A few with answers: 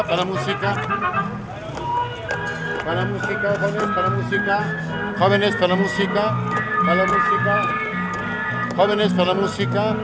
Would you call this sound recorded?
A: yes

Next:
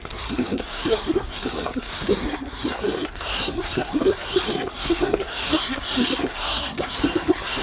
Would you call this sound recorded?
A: no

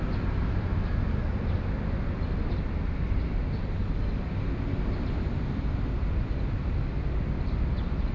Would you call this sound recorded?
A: yes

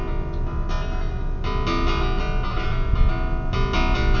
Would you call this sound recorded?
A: yes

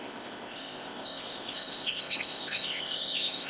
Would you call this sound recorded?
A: no